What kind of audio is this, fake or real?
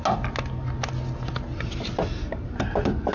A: real